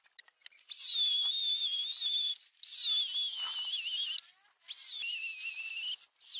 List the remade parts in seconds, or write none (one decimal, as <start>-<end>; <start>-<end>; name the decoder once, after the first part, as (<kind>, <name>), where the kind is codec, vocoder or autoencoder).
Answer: 0.4-2.3 (vocoder, BigVGAN v2); 4.8-5.7